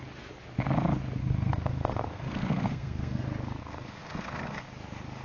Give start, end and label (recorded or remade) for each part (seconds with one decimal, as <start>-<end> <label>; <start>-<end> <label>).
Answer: 0.0-1.2 recorded; 1.2-3.2 remade; 3.2-3.6 recorded; 3.6-4.7 remade; 4.7-5.2 recorded